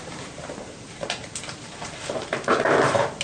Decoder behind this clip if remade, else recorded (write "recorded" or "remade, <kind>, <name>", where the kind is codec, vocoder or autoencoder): remade, vocoder, BigVGAN v2